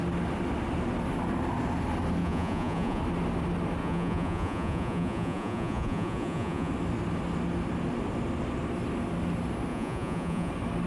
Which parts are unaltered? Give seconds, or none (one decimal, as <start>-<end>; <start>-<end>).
0.0-2.2; 3.0-3.8; 6.7-9.7; 10.5-10.9